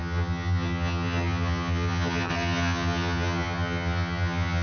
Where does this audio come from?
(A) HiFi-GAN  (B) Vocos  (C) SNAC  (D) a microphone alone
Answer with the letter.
A